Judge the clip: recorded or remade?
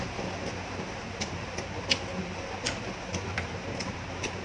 recorded